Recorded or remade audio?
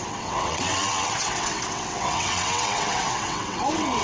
remade